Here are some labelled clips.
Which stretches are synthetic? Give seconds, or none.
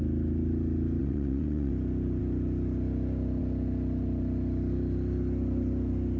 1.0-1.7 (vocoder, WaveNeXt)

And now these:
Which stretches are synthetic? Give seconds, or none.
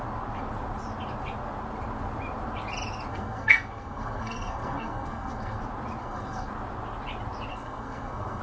3.1-5.6 (codec, SNAC); 6.0-6.5; 7.5-8.4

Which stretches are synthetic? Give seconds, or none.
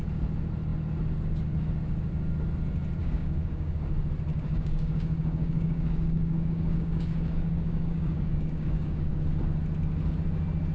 3.0-3.8 (codec, DAC); 4.3-9.2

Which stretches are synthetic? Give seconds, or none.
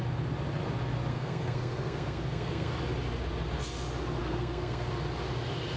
1.1-2.7 (codec, SNAC); 4.2-4.9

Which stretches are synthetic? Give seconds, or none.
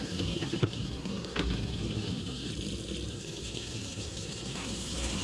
0.0-2.5 (codec, SNAC); 3.1-5.2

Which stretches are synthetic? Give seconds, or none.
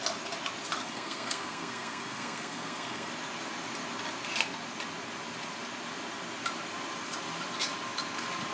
0.8-3.1 (codec, SNAC)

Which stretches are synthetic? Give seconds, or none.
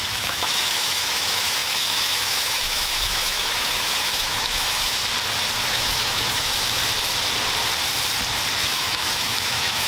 0.0-5.0 (autoencoder, DAC-VAE); 5.7-6.8; 8.6-9.9